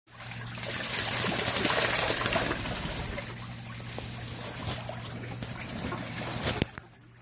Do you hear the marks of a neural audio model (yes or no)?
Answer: yes